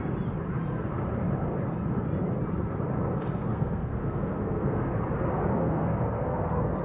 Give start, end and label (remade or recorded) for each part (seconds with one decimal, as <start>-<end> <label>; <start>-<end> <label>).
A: 0.0-3.5 recorded; 3.5-4.9 remade; 4.9-5.6 recorded; 5.6-6.8 remade